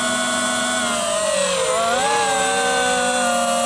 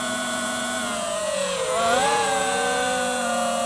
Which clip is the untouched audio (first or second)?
first